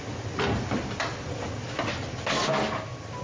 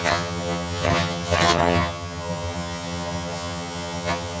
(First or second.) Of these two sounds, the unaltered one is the first